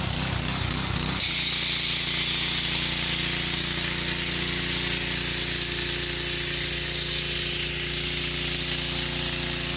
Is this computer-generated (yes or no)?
no